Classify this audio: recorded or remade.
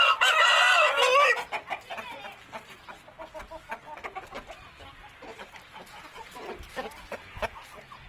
recorded